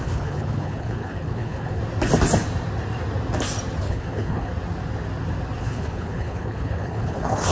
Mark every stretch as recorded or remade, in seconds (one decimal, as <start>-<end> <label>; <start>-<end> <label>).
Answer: 0.0-1.8 remade; 1.8-3.8 recorded; 3.8-4.5 remade; 4.5-5.6 recorded; 5.6-7.5 remade